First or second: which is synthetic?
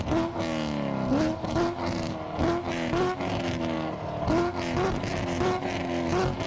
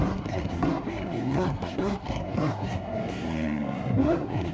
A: second